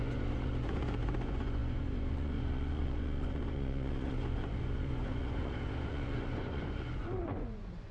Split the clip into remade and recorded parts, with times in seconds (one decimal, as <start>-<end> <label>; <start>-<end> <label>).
0.0-7.9 remade